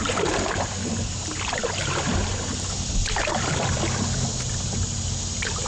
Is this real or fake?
real